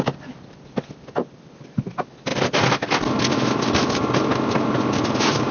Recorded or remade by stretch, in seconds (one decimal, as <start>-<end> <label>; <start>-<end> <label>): 0.0-5.5 recorded